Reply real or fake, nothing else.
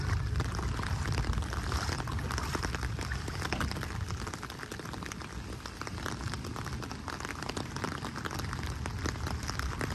real